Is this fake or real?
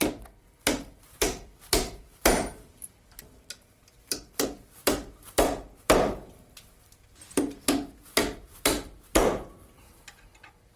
fake